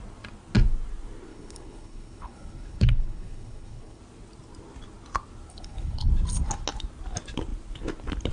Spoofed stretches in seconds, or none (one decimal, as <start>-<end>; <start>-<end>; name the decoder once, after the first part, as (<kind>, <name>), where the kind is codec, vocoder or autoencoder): 1.3-4.0 (codec, HILCodec); 5.5-6.1